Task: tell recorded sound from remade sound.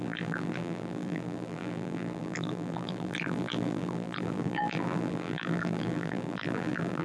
remade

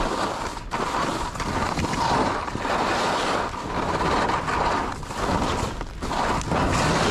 recorded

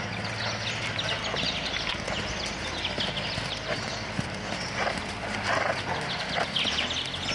recorded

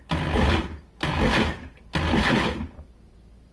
recorded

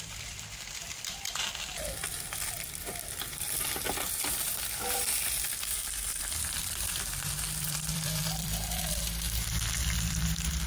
remade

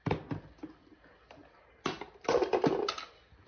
recorded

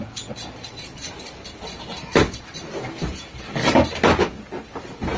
recorded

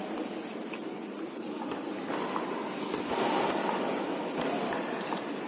recorded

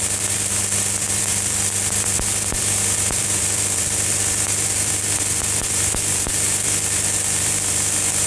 remade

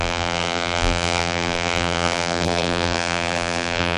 remade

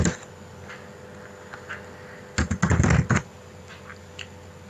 recorded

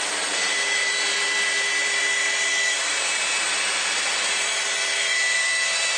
remade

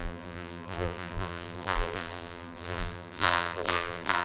remade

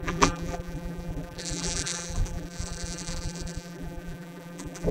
remade